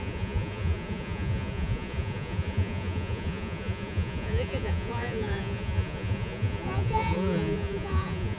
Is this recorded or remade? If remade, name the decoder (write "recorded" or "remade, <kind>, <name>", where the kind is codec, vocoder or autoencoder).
remade, vocoder, Vocos